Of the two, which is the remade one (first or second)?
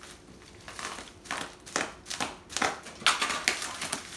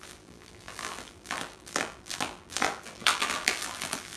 second